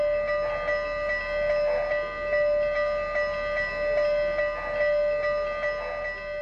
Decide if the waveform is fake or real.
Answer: real